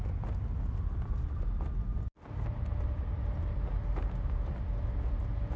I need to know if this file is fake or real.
real